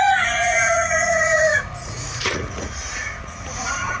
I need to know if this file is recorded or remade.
remade